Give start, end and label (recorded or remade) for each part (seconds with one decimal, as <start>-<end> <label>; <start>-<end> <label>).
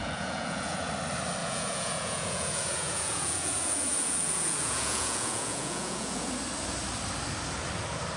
0.0-0.9 remade; 0.9-1.4 recorded; 1.4-6.3 remade; 6.3-8.2 recorded